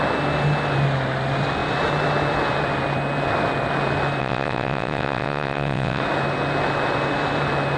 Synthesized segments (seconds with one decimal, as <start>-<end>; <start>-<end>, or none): 4.2-6.0